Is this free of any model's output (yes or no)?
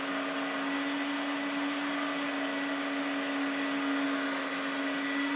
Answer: yes